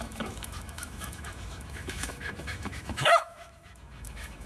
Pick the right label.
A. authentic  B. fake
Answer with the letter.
B